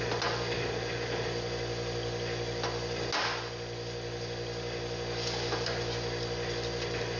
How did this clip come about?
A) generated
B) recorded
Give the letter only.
B